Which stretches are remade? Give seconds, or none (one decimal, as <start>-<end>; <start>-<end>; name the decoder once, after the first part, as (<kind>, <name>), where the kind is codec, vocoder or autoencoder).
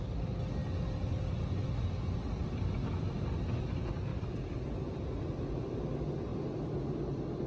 none